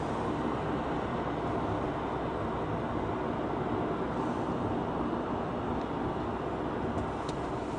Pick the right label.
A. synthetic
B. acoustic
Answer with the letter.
B